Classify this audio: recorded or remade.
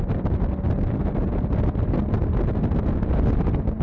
recorded